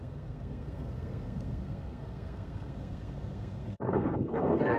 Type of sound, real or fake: fake